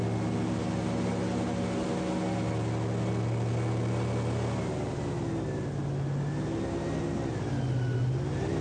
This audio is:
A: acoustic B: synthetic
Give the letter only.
A